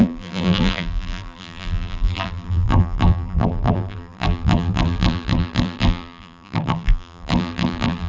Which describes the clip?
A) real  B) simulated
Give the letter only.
B